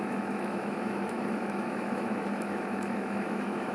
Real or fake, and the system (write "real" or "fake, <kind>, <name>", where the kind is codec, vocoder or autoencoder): fake, autoencoder, DAC-VAE